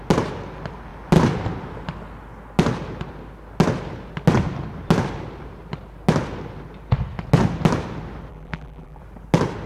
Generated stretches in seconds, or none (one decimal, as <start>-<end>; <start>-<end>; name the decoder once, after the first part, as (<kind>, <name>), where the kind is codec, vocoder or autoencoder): 8.3-9.0 (vocoder, BigVGAN v2)